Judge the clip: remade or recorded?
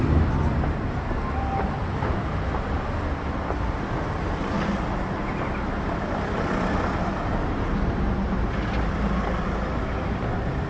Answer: recorded